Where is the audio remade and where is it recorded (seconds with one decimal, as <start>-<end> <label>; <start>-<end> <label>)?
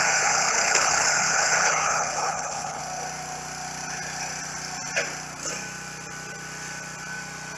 0.0-2.8 remade; 2.8-7.6 recorded